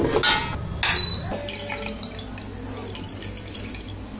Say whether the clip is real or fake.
real